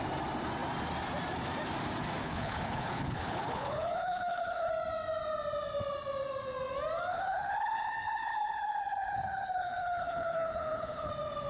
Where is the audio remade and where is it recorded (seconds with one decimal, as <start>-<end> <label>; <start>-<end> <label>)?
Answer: 0.0-2.2 recorded; 2.2-4.7 remade; 4.7-7.1 recorded; 7.1-11.1 remade; 11.1-11.5 recorded